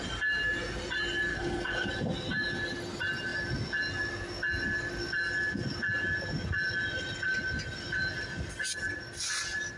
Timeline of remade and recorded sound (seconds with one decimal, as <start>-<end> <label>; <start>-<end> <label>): 0.0-1.3 recorded; 1.3-1.9 remade; 1.9-9.8 recorded